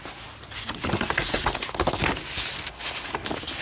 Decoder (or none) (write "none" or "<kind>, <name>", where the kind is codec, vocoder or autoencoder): none